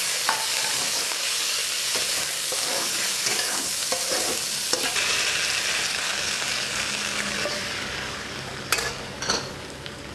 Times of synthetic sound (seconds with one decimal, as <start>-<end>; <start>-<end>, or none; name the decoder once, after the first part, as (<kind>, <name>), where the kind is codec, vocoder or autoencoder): 0.0-1.6 (codec, DAC); 2.3-3.9; 5.9-10.1